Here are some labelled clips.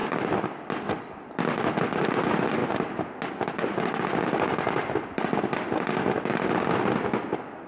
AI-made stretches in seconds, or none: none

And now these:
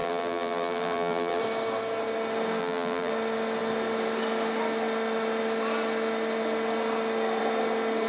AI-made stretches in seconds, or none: 0.0-1.4 (vocoder, BigVGAN v2); 2.6-3.1

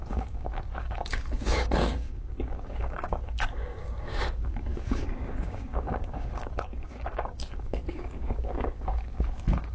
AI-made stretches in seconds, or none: 0.0-9.7 (codec, DAC)

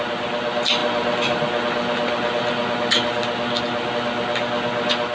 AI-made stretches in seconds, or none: none

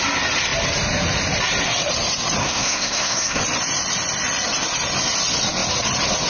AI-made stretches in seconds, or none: 2.4-3.4 (codec, SNAC)